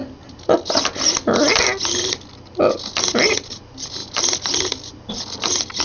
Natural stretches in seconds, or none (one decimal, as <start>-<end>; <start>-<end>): 0.0-3.3